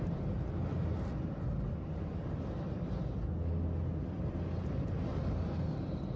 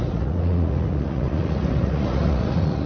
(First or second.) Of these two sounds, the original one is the first